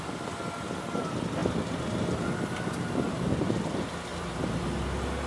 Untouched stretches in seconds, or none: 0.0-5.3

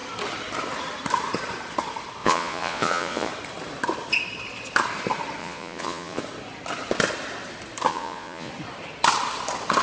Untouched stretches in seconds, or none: 0.0-2.2; 3.3-5.4; 6.2-7.9; 8.5-9.8

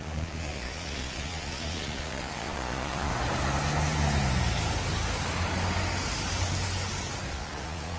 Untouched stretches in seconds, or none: 3.1-7.3